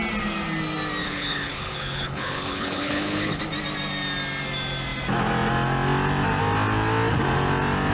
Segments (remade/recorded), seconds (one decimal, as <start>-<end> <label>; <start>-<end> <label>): 0.0-1.0 recorded; 1.0-3.4 remade; 3.4-7.9 recorded